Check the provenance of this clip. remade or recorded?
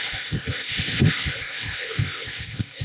remade